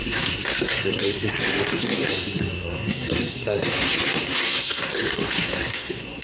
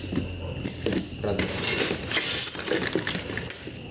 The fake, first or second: first